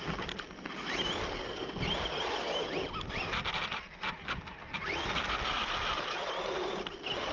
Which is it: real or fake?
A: real